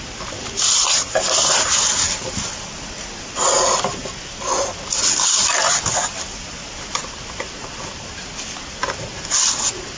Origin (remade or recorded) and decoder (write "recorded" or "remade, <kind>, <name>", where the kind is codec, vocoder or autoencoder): recorded